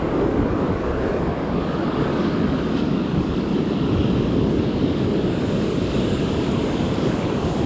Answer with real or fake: fake